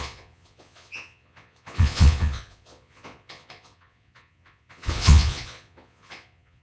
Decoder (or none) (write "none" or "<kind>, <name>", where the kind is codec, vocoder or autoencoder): vocoder, Vocos